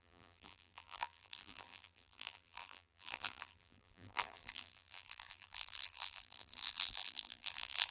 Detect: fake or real fake